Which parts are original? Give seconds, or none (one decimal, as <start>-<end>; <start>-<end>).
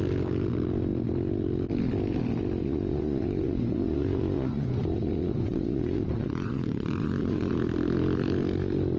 0.0-2.6; 7.5-9.0